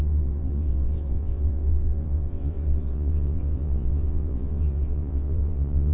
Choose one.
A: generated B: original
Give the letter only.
A